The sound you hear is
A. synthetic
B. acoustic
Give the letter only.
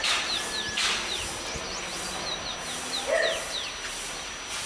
B